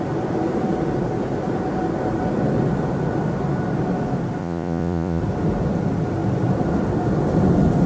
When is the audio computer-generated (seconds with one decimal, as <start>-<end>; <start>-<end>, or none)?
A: 4.4-5.2